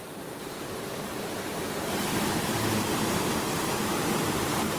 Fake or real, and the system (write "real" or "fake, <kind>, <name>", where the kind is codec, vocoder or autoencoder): fake, vocoder, BigVGAN v2